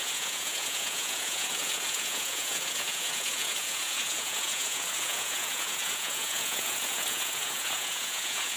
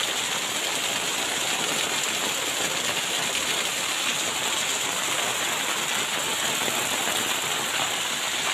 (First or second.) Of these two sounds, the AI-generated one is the first